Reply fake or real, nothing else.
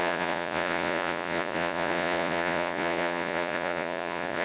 fake